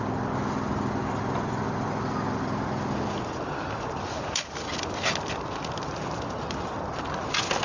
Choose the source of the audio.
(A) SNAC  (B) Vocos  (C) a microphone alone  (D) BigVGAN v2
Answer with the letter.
C